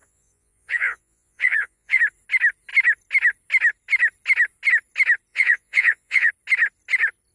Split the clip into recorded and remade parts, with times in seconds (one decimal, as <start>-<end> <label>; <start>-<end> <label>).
0.0-2.0 remade; 2.0-5.3 recorded; 5.3-6.3 remade; 6.3-7.3 recorded